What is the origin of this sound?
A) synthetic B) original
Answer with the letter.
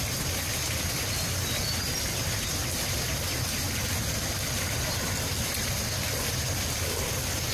B